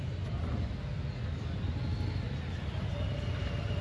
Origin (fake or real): real